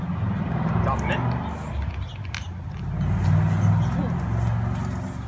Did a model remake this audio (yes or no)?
no